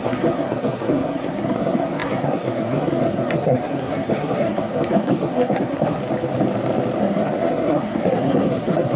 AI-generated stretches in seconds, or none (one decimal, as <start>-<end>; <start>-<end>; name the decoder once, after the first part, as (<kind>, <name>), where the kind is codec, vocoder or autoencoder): 0.0-6.0 (codec, SNAC); 7.0-9.0